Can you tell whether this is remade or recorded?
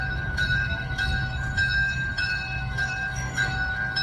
remade